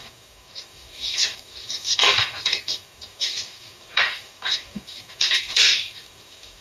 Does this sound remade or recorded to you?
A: remade